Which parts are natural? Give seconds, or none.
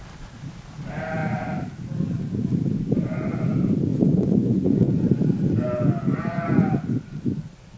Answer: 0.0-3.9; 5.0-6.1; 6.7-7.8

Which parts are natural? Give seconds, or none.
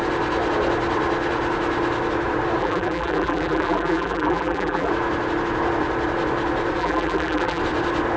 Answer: 0.0-2.6; 4.9-6.8; 7.6-8.2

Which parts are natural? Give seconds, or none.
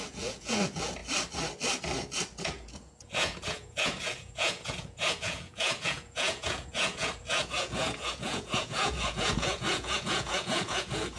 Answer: 1.0-2.4